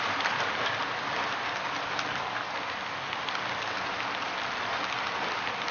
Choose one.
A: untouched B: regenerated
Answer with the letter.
A